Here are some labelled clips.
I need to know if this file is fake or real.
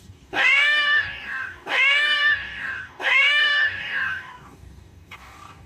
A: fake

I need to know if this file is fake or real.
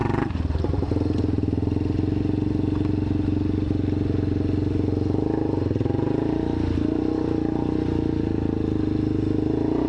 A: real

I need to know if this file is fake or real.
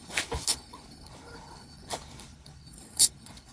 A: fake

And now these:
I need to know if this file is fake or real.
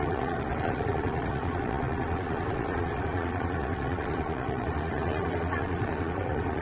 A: fake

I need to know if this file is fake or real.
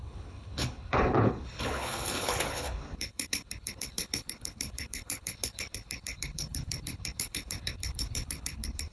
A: fake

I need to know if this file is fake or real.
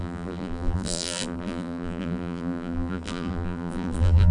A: fake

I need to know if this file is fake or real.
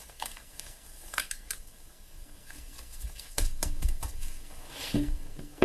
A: fake